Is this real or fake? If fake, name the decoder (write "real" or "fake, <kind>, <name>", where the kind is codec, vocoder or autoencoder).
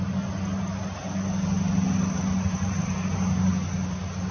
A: real